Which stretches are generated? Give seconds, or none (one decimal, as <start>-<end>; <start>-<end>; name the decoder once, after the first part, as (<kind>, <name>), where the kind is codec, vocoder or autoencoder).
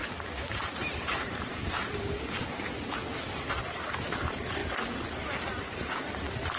0.0-4.6 (vocoder, BigVGAN v2); 5.5-6.6